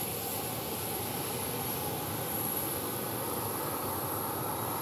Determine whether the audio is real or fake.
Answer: real